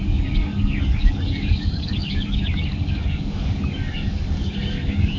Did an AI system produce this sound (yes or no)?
yes